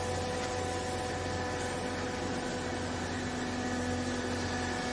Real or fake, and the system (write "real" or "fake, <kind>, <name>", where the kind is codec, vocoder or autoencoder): real